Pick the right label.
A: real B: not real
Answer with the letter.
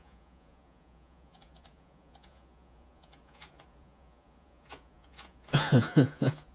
B